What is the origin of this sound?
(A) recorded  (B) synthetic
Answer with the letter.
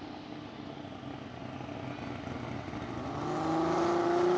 A